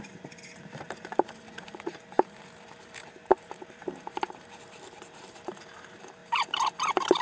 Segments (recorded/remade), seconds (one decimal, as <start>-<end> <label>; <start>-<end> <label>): 0.0-7.2 remade

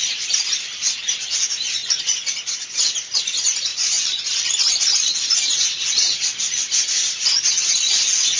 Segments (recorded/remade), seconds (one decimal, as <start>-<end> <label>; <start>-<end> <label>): 0.0-3.7 recorded; 3.7-6.2 remade; 6.2-8.4 recorded

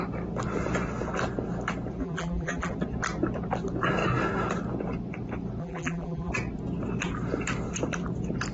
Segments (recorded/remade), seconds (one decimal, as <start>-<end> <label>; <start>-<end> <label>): 0.0-2.0 recorded; 2.0-2.7 remade; 2.7-5.6 recorded; 5.6-6.3 remade; 6.3-8.5 recorded

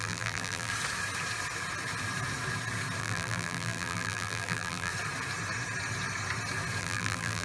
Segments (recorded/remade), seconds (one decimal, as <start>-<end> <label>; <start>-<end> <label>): 0.0-0.7 remade; 0.7-3.0 recorded; 3.0-4.9 remade; 4.9-6.8 recorded; 6.8-7.4 remade

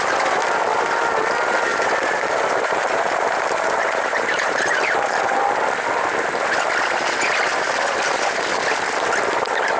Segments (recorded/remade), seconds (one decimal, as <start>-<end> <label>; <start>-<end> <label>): 0.0-1.7 recorded; 1.7-5.4 remade; 5.4-9.8 recorded

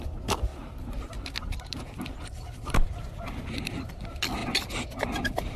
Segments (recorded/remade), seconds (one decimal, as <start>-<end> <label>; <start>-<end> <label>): 0.0-5.6 recorded